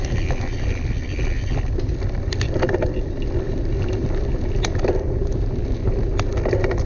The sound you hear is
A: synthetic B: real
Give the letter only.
B